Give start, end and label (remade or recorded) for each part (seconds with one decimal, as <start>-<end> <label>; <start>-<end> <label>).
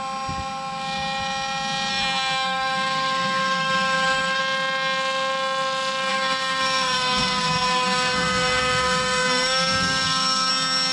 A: 0.0-1.9 recorded; 1.9-4.4 remade; 4.4-6.1 recorded; 6.1-10.5 remade; 10.5-10.9 recorded